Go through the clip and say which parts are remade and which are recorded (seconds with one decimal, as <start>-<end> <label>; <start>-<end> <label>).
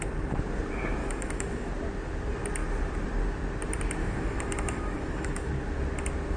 0.0-1.0 recorded; 1.0-1.7 remade; 1.7-4.0 recorded; 4.0-5.5 remade; 5.5-6.4 recorded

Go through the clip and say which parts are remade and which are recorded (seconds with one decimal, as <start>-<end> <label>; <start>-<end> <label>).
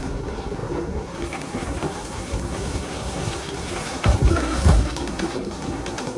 0.0-6.2 remade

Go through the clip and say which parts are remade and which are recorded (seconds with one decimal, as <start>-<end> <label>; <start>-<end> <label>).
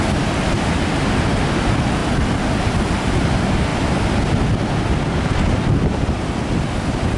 0.0-7.2 recorded